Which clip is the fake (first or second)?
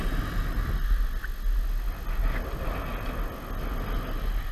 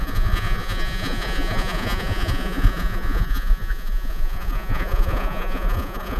second